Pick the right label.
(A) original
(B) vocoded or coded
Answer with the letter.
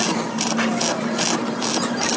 A